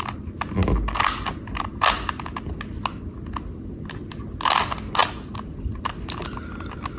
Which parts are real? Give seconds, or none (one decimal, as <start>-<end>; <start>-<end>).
0.0-7.0